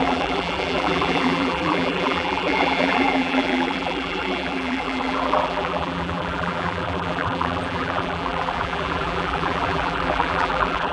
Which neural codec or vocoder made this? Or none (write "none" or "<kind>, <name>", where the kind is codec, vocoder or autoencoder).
vocoder, BigVGAN v2